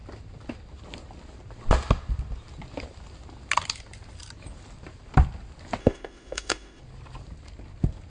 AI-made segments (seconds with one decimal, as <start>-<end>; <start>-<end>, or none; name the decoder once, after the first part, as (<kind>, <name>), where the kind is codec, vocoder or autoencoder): 5.8-6.8 (autoencoder, DAC-VAE)